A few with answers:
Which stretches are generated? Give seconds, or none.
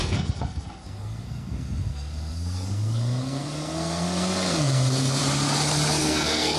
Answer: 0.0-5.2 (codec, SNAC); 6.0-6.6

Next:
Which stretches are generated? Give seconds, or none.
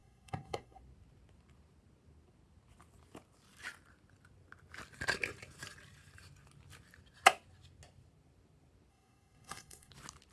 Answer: 0.0-0.8 (codec, SNAC); 8.9-9.9